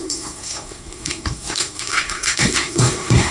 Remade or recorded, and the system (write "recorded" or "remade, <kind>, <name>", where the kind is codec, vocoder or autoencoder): remade, codec, SNAC